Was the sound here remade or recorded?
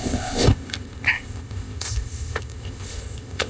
remade